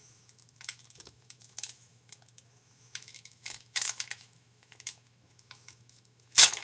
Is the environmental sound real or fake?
fake